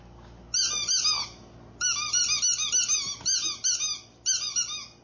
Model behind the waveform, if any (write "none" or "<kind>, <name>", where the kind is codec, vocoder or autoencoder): none